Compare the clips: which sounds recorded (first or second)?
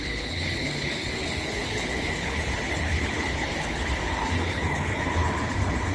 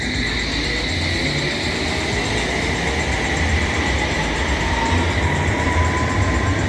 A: second